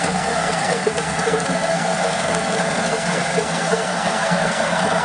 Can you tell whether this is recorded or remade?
remade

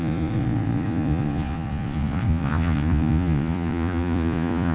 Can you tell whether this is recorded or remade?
remade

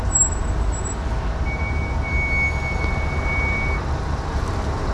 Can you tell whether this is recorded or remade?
recorded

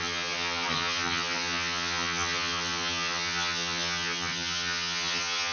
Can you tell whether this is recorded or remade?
remade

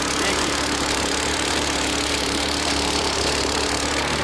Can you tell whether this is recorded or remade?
remade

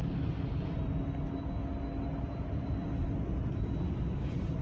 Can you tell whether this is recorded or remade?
recorded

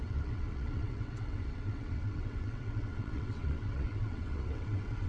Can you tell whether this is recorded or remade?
remade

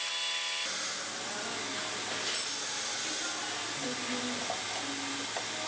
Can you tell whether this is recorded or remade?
recorded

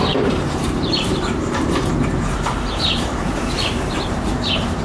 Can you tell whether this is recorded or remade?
remade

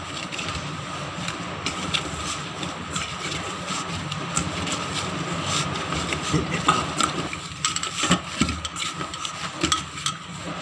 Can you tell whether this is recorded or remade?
remade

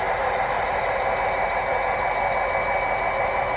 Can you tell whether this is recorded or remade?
recorded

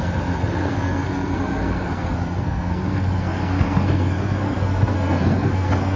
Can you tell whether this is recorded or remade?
remade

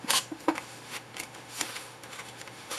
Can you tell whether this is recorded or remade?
remade